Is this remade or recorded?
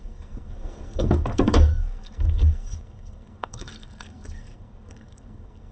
remade